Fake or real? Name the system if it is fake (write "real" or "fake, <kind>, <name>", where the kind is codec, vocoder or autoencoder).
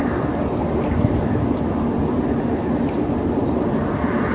real